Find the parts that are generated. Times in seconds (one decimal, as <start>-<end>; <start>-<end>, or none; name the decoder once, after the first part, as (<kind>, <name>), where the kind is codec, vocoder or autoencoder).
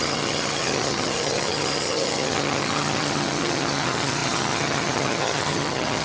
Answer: 0.0-6.0 (vocoder, HiFi-GAN)